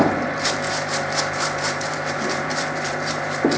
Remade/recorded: remade